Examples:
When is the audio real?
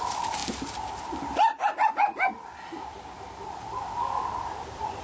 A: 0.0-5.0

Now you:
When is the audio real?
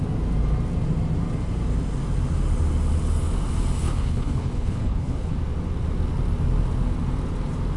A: 0.0-3.8; 5.3-7.8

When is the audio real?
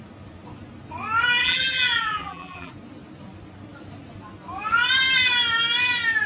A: 0.0-1.4; 2.7-6.3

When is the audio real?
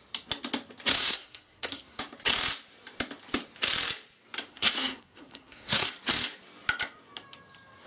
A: 0.0-0.9; 2.0-4.5; 5.9-7.9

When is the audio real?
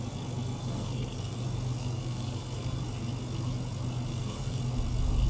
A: 0.0-0.6; 1.4-1.8; 2.8-4.1; 4.6-5.3